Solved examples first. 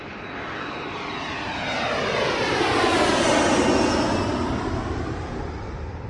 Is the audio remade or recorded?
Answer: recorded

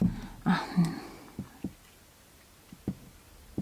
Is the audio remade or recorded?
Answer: recorded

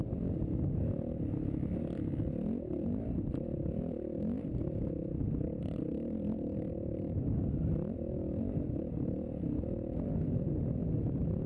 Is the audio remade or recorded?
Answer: recorded